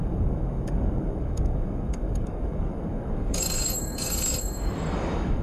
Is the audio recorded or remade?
remade